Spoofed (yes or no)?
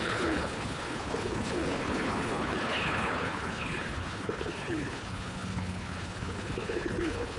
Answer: yes